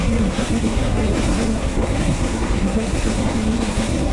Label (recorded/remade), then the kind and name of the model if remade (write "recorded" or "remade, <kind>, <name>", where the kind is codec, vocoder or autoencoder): remade, codec, SNAC